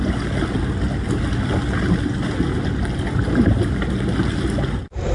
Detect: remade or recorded recorded